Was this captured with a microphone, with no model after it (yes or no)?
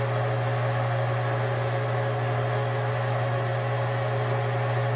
yes